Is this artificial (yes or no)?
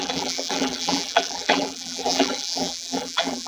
yes